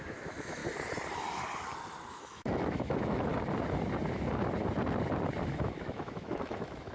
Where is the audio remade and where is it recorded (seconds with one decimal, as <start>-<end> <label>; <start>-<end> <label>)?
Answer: 0.0-0.6 remade; 0.6-2.1 recorded; 2.1-3.3 remade; 3.3-5.5 recorded; 5.5-6.9 remade